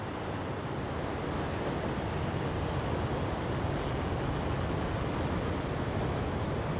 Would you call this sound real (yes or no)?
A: yes